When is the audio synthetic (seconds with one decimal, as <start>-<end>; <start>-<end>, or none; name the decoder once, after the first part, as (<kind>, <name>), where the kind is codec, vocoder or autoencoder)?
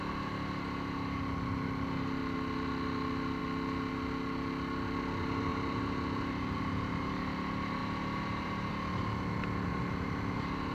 5.5-7.0 (vocoder, BigVGAN v2); 7.8-8.7